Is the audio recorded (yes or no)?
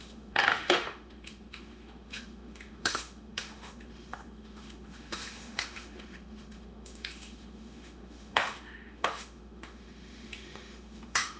no